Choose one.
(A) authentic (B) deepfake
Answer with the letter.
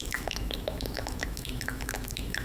B